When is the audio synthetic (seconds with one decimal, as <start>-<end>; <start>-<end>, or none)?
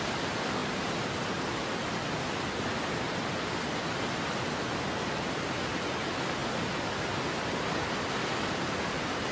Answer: none